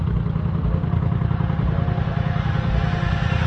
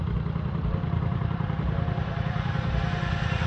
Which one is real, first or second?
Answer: first